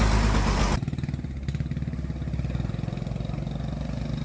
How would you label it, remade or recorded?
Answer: recorded